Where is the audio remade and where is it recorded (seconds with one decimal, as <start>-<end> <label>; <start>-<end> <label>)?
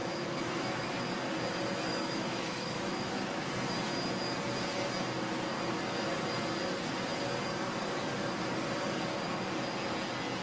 0.0-0.9 remade; 0.9-1.9 recorded; 1.9-3.5 remade; 3.5-10.4 recorded